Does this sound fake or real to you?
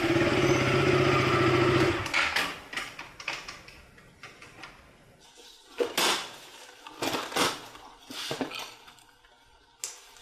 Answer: real